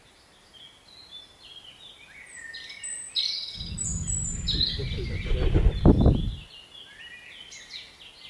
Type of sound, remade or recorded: recorded